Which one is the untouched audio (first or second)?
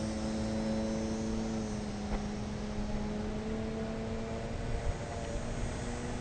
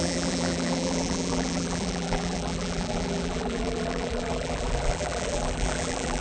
first